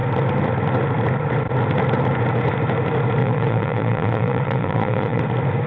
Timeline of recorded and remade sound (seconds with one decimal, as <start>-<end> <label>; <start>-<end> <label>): 0.0-3.2 recorded; 3.2-5.2 remade; 5.2-5.7 recorded